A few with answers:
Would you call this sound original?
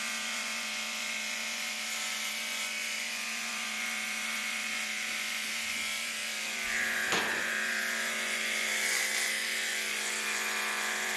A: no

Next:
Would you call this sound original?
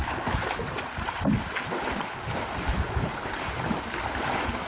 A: yes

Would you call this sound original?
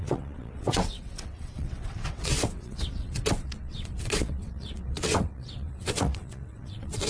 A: no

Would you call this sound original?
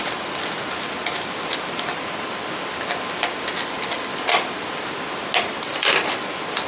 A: yes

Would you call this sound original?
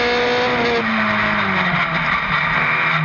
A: yes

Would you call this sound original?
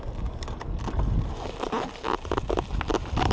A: yes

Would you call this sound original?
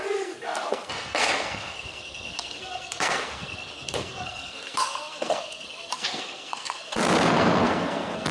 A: no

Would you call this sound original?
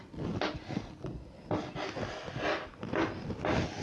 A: yes